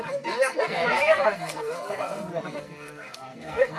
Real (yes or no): no